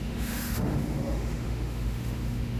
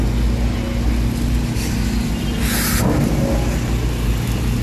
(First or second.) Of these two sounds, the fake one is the first